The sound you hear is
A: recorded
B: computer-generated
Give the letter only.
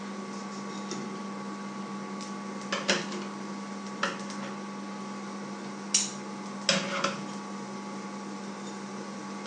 A